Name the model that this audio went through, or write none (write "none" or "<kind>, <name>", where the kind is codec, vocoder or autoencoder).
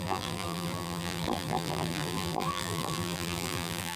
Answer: vocoder, BigVGAN v2